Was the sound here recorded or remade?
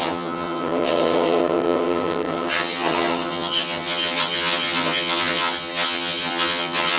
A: remade